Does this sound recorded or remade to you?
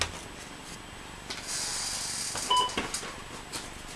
recorded